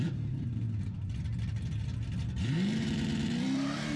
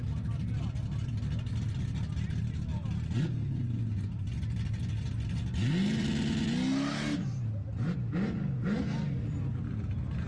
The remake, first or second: first